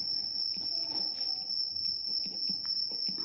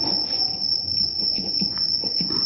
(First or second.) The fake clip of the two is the second